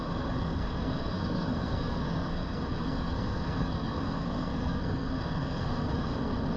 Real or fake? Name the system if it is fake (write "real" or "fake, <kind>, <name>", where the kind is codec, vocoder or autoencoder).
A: fake, codec, SNAC